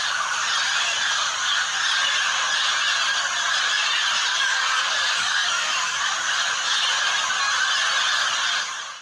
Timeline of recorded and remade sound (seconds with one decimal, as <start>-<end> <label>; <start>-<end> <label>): 0.0-4.3 recorded; 4.3-6.0 remade; 6.0-9.0 recorded